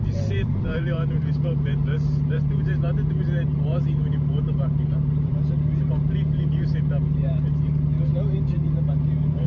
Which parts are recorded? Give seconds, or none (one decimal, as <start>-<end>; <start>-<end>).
none